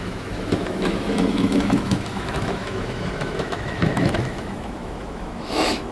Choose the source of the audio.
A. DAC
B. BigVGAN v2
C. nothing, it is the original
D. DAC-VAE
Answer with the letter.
D